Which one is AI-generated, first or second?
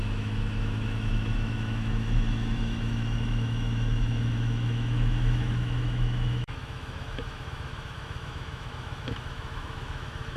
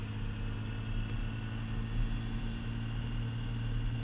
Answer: first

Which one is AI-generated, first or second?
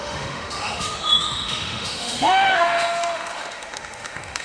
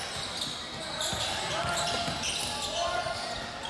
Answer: first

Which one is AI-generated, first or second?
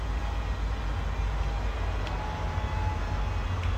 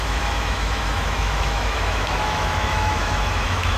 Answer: second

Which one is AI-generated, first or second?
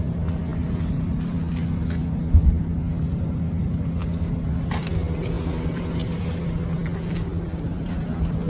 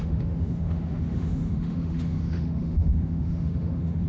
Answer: second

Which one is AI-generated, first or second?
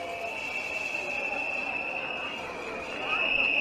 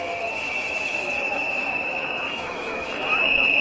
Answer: second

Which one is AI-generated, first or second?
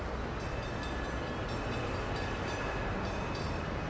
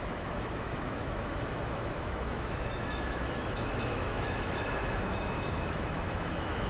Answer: second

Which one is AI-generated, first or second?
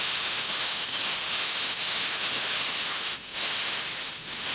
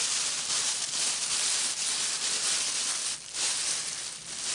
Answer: first